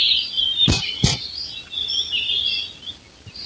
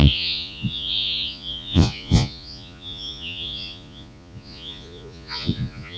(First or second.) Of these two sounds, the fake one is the second